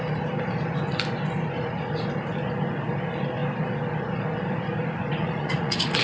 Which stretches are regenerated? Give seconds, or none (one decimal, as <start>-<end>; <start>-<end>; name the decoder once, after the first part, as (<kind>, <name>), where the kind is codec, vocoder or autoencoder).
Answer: 5.2-6.0 (vocoder, Vocos)